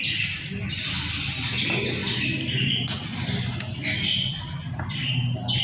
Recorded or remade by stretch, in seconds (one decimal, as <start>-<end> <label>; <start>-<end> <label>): 0.0-5.6 recorded